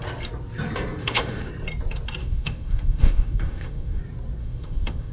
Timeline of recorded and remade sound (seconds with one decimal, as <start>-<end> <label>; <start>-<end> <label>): 0.0-1.0 recorded; 1.0-1.5 remade; 1.5-2.2 recorded; 2.2-4.0 remade; 4.0-4.4 recorded; 4.4-5.1 remade

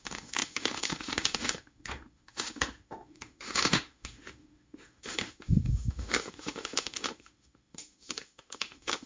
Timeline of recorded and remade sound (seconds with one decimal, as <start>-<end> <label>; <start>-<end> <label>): 0.0-9.1 remade

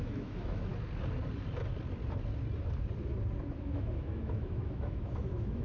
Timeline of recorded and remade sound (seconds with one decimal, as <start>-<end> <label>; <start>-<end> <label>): 0.0-0.7 remade; 0.7-3.6 recorded; 3.6-5.6 remade